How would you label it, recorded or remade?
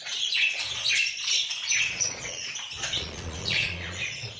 remade